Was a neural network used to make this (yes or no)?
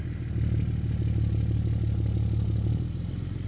no